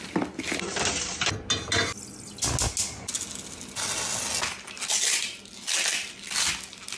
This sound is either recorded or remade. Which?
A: recorded